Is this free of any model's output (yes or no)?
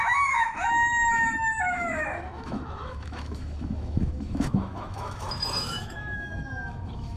no